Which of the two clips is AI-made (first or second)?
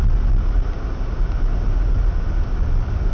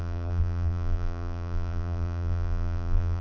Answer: second